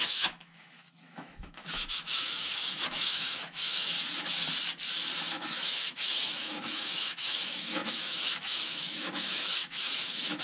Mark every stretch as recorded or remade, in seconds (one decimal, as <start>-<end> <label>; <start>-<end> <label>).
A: 0.0-3.9 remade; 3.9-5.2 recorded; 5.2-10.4 remade